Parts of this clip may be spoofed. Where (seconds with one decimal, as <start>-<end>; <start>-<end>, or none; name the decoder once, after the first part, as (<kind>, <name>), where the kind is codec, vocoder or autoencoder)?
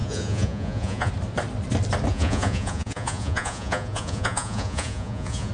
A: 0.0-1.1 (vocoder, Vocos); 2.1-5.5